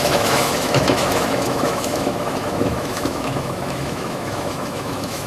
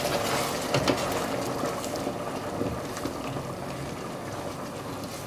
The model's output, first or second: first